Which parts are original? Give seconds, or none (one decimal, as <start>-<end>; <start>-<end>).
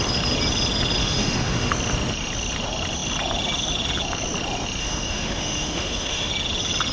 0.0-1.0; 1.7-4.8; 6.3-6.9